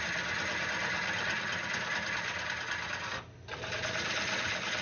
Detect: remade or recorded recorded